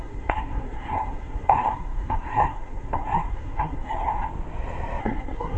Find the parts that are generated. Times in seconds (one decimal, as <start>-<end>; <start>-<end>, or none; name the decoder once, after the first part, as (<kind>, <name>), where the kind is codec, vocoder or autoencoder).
0.0-4.1 (codec, SNAC); 5.0-5.6